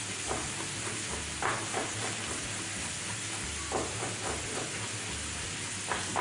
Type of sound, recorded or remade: recorded